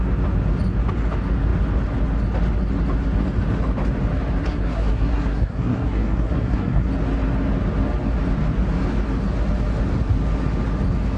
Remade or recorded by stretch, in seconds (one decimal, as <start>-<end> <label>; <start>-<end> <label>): 0.0-4.4 recorded; 4.4-6.9 remade; 6.9-11.2 recorded